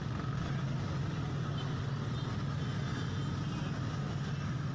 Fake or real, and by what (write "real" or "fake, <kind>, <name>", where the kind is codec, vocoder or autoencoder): real